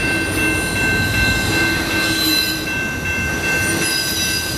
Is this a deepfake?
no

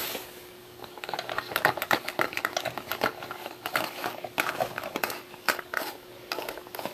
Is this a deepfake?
yes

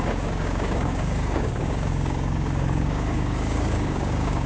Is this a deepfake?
yes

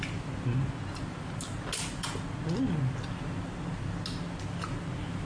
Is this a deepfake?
no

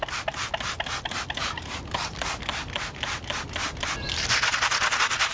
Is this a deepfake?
no